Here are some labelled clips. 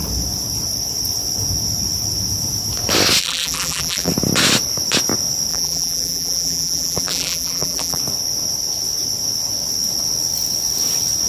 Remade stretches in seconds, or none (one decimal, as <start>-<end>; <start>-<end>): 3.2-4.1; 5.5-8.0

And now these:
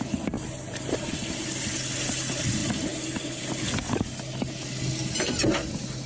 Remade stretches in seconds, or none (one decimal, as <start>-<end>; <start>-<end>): none

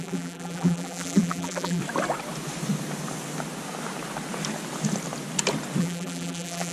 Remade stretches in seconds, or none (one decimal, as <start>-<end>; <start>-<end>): 0.0-1.8; 5.8-6.7

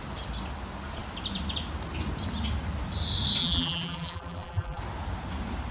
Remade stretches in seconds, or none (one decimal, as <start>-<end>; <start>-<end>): 3.4-4.8